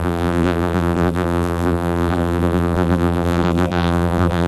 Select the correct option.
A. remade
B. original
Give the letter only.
A